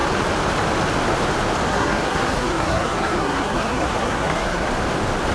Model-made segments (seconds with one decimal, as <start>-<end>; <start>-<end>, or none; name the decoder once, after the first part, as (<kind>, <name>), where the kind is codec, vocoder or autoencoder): 1.7-4.7 (codec, SNAC)